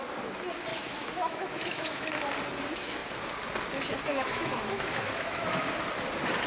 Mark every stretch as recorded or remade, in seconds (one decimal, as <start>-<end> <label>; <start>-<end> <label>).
0.0-0.7 recorded; 0.7-2.2 remade; 2.2-4.1 recorded; 4.1-5.7 remade; 5.7-6.5 recorded